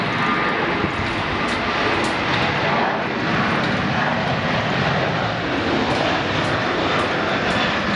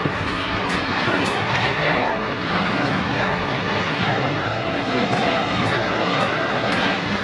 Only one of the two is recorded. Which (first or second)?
first